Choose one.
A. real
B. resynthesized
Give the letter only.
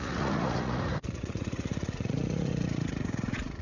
B